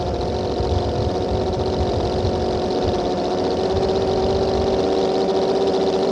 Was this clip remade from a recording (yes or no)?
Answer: no